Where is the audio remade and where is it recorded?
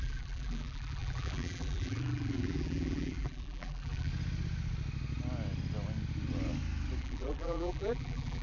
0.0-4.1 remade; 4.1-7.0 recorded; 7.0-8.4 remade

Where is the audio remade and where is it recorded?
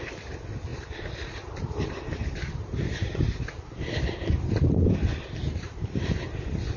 0.0-0.7 recorded; 0.7-3.4 remade; 3.4-5.1 recorded; 5.1-6.3 remade; 6.3-6.8 recorded